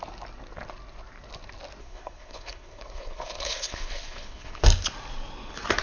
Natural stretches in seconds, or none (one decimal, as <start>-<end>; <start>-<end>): 0.0-1.8; 4.6-5.8